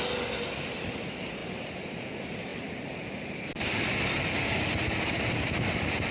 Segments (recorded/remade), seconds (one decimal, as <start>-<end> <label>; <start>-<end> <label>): 0.0-6.1 recorded